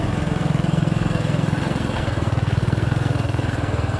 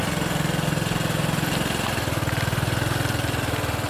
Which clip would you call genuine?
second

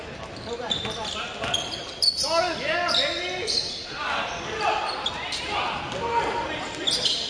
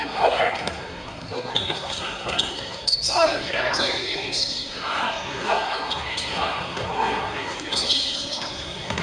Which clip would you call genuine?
first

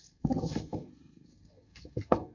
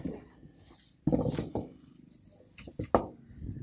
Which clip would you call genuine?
second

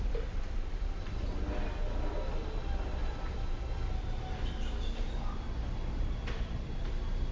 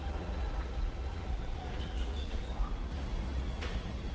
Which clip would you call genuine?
first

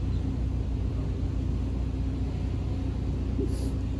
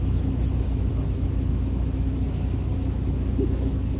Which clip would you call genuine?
first